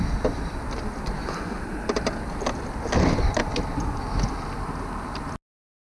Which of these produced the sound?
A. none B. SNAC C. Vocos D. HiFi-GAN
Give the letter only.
A